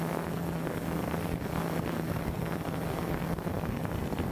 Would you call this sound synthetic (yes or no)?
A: yes